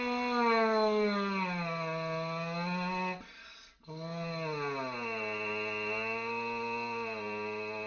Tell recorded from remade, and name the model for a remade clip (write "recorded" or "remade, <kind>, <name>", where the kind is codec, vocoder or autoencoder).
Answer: recorded